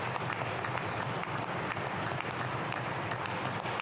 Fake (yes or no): no